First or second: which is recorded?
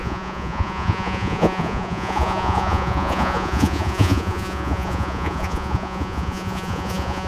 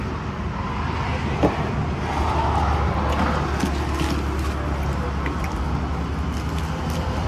second